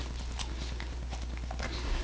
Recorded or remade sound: recorded